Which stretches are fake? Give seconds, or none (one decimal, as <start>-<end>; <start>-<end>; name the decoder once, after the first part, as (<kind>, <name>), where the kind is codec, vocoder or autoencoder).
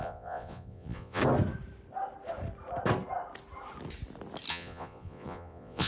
0.0-1.2 (vocoder, Vocos); 4.5-5.9